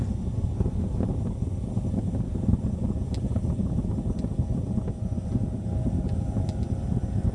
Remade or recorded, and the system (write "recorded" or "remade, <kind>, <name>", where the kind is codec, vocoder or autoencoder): recorded